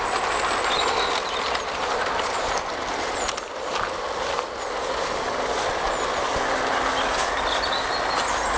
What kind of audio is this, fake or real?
real